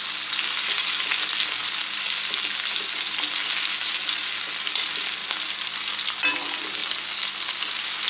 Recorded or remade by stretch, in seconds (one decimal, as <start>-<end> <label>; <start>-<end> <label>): 0.0-8.1 recorded